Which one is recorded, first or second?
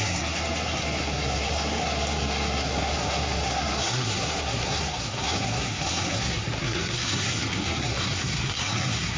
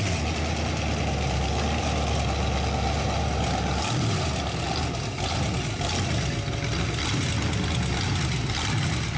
second